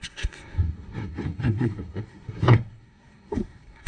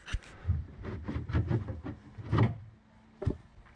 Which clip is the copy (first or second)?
first